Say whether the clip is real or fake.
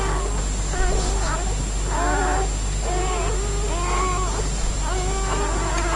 real